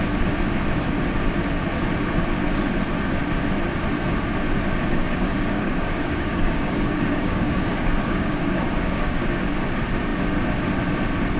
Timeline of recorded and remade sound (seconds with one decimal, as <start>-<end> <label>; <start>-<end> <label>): 0.0-5.0 recorded; 5.0-9.4 remade; 9.4-11.4 recorded